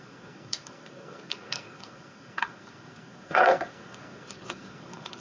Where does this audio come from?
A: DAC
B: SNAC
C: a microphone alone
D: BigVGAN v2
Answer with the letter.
B